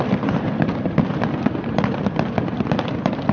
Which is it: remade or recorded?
recorded